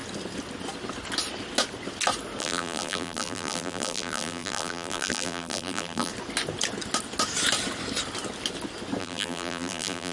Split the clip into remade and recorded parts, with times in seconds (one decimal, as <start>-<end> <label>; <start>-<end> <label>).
0.0-2.4 recorded; 2.4-6.1 remade; 6.1-9.0 recorded; 9.0-10.1 remade